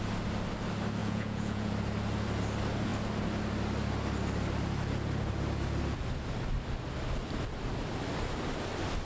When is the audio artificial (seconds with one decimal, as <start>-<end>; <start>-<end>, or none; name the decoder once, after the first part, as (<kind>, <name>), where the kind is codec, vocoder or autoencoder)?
1.0-1.7 (vocoder, Vocos)